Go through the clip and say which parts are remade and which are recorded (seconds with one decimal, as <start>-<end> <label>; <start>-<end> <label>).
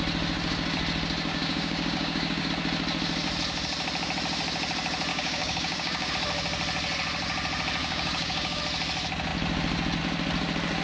0.0-1.3 recorded; 1.3-2.5 remade; 2.5-5.1 recorded; 5.1-6.1 remade; 6.1-7.8 recorded; 7.8-8.6 remade; 8.6-10.8 recorded